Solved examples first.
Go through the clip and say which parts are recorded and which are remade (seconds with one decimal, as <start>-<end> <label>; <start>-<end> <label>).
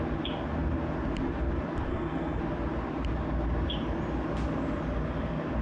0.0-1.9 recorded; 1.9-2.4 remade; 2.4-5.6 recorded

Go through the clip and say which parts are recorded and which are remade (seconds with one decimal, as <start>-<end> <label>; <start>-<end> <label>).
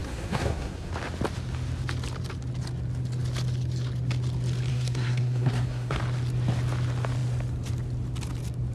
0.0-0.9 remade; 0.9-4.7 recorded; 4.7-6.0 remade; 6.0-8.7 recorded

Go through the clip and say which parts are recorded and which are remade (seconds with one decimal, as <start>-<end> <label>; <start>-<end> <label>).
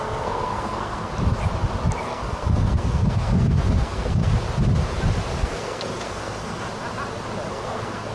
0.0-1.1 remade; 1.1-2.0 recorded; 2.0-4.3 remade; 4.3-5.4 recorded; 5.4-6.7 remade; 6.7-7.5 recorded; 7.5-8.1 remade